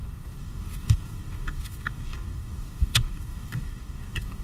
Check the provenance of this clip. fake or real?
fake